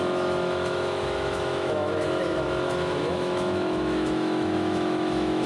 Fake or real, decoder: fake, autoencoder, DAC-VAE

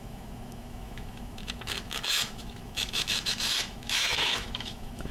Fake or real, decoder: fake, autoencoder, DAC-VAE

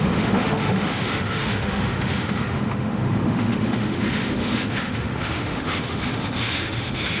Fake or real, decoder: fake, autoencoder, DAC-VAE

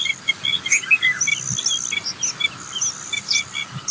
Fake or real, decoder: real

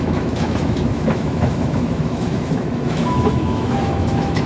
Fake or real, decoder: fake, autoencoder, DAC-VAE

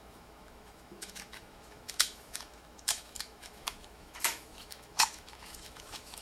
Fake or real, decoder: fake, autoencoder, DAC-VAE